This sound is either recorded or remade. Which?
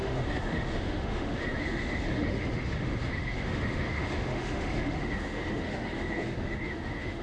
remade